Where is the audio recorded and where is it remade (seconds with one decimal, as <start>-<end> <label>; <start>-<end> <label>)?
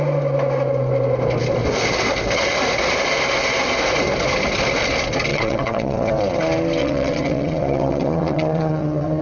0.0-5.3 recorded; 5.3-6.1 remade; 6.1-6.8 recorded; 6.8-9.2 remade